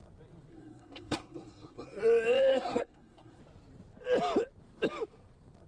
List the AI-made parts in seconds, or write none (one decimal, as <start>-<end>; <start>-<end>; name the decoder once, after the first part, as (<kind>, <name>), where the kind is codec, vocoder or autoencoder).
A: 0.5-2.0 (codec, SNAC); 2.5-3.4

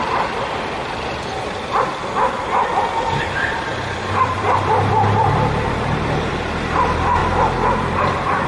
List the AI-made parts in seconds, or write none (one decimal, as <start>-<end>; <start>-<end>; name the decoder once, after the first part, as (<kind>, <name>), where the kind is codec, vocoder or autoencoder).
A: 0.0-7.2 (vocoder, BigVGAN v2); 7.8-8.5

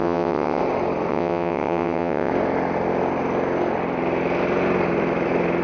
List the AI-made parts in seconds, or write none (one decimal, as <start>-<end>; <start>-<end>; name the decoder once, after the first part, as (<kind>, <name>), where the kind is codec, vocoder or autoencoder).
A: 0.0-0.6 (vocoder, WaveNeXt); 1.1-2.3

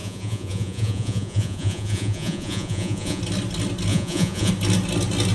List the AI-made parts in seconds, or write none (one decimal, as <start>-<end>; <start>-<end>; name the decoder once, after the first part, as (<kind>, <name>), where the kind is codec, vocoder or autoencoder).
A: 0.0-3.2 (vocoder, Vocos); 3.9-4.5

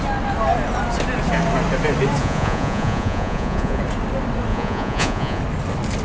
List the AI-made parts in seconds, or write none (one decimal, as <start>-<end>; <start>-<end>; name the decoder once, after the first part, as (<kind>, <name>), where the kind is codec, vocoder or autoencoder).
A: 2.2-3.8 (vocoder, Vocos); 4.5-5.4

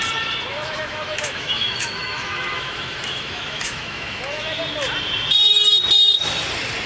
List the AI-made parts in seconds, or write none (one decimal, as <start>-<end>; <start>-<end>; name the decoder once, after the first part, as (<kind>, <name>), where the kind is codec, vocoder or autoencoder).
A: 0.5-4.6 (autoencoder, DAC-VAE)

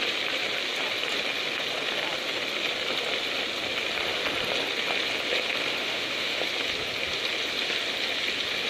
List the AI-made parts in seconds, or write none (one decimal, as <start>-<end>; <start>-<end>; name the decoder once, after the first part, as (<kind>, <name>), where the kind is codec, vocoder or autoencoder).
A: 5.8-6.4 (autoencoder, DAC-VAE)

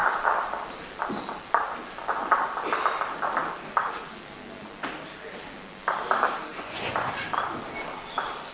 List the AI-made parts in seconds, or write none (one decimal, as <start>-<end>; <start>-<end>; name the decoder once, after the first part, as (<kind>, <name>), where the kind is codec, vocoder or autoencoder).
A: 6.5-7.1 (vocoder, Vocos)